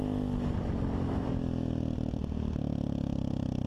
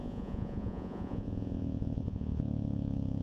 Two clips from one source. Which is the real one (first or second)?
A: first